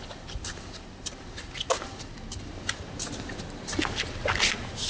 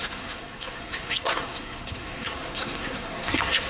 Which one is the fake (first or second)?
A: second